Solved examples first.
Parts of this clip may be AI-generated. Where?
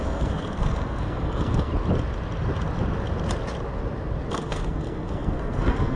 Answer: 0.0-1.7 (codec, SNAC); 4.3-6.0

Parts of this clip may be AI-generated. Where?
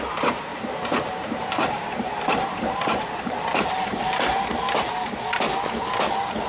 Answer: 0.5-4.4 (vocoder, BigVGAN v2)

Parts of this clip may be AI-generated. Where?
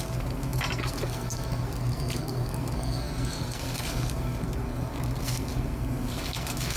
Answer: 0.0-6.8 (codec, SNAC)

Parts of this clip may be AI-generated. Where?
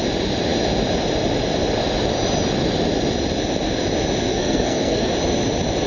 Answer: 4.3-5.1 (codec, SNAC)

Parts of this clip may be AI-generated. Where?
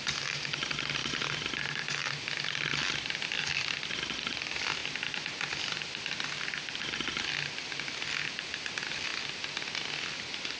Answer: none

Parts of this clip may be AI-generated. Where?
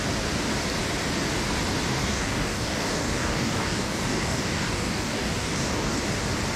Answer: 2.0-6.0 (codec, DAC)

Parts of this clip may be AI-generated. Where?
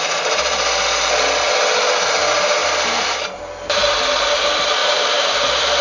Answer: 2.6-3.4 (vocoder, BigVGAN v2); 4.8-5.8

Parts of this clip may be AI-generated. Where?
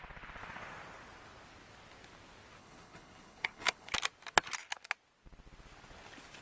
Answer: 2.6-3.9 (codec, HILCodec)